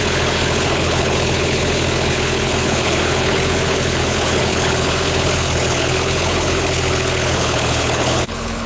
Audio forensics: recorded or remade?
remade